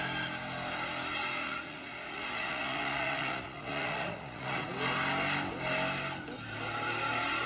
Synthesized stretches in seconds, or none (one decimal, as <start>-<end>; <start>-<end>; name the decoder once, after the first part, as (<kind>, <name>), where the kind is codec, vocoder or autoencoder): 1.4-4.7 (vocoder, Vocos)